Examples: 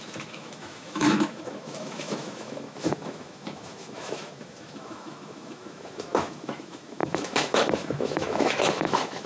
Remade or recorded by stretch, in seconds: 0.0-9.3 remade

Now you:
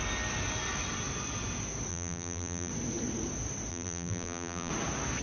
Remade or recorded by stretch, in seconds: 0.0-1.9 recorded; 1.9-2.7 remade; 2.7-3.7 recorded; 3.7-4.7 remade; 4.7-5.2 recorded

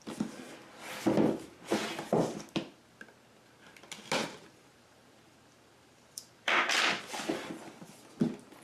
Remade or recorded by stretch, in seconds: 0.0-4.2 recorded; 4.2-7.0 remade; 7.0-8.6 recorded

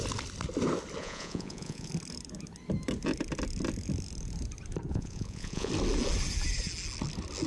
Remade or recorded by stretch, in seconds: 0.0-1.0 recorded; 1.0-1.9 remade; 1.9-4.9 recorded; 4.9-5.7 remade; 5.7-7.5 recorded

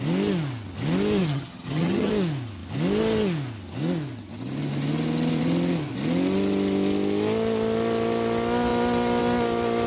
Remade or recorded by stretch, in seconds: 0.0-1.2 recorded; 1.2-2.1 remade; 2.1-9.9 recorded

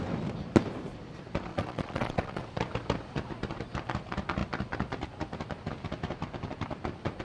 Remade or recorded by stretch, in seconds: 0.0-1.5 recorded; 1.5-2.4 remade; 2.4-7.2 recorded

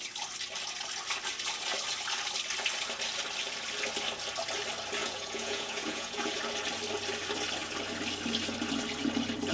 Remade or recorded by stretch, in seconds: 0.0-5.0 recorded; 5.0-6.3 remade; 6.3-9.5 recorded

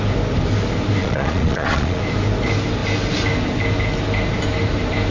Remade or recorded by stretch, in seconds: 0.0-1.0 recorded; 1.0-2.0 remade; 2.0-5.1 recorded